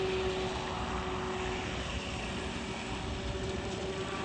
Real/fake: real